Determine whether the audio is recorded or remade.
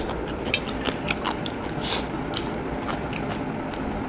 recorded